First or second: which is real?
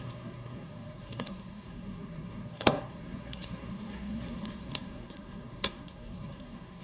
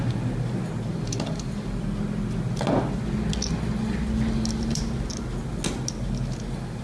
second